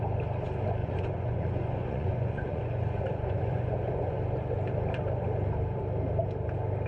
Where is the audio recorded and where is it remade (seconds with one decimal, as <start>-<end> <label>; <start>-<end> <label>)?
0.0-0.8 recorded; 0.8-4.2 remade; 4.2-6.9 recorded